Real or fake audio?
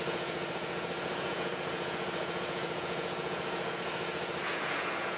fake